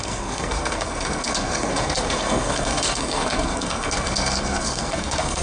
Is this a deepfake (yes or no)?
yes